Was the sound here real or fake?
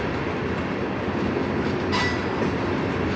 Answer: real